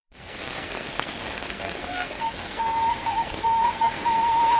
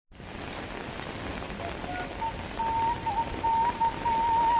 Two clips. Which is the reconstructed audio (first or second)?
first